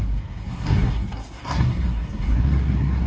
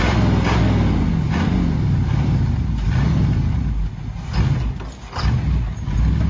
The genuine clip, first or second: second